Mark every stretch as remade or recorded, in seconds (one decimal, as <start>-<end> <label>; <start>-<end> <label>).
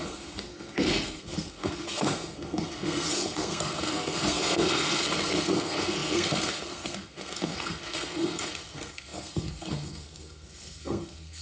0.0-11.4 remade